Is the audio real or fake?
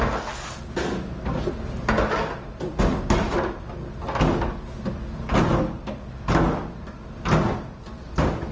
real